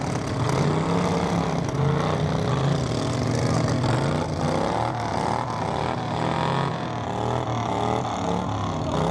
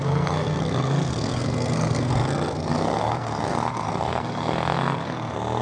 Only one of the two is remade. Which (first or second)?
second